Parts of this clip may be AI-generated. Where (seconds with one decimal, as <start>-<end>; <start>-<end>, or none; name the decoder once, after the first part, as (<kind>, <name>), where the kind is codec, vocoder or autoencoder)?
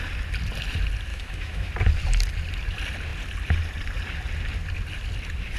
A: 1.1-1.7 (autoencoder, DAC-VAE)